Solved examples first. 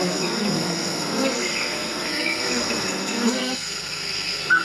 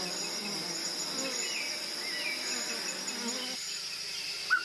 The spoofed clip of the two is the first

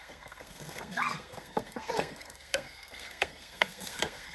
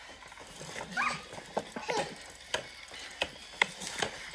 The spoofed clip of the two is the first